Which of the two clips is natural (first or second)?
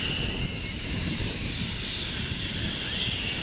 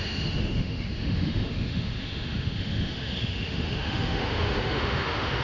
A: first